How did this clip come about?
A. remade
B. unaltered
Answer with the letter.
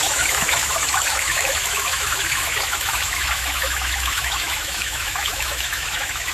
A